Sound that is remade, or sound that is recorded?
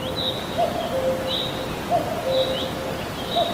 recorded